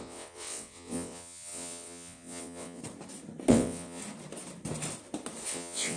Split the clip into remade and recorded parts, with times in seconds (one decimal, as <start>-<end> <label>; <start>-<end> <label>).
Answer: 0.0-2.8 remade; 2.8-3.5 recorded; 3.5-4.0 remade; 4.0-5.5 recorded; 5.5-6.0 remade